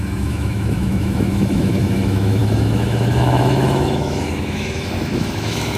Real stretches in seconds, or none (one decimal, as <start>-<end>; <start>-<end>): none